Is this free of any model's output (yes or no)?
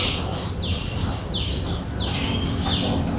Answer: yes